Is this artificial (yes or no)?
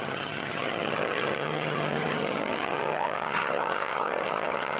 yes